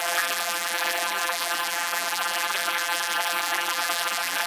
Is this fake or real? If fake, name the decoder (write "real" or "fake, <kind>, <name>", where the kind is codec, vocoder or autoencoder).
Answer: fake, vocoder, BigVGAN v2